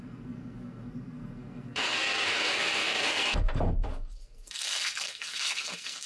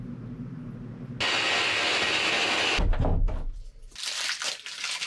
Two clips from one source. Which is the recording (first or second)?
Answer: second